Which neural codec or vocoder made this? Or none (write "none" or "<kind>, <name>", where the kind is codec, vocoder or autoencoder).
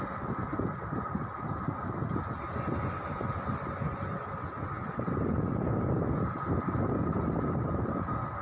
none